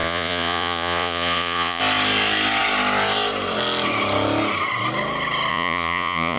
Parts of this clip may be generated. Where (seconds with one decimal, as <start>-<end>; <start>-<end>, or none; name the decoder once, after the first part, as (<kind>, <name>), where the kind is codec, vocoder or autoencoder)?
0.0-1.8 (vocoder, Vocos); 5.5-6.4